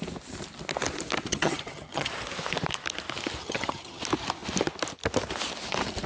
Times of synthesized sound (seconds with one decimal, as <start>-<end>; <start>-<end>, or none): 1.3-2.1; 3.4-4.0